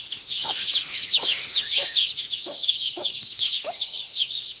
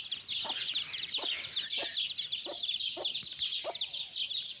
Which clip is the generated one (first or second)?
first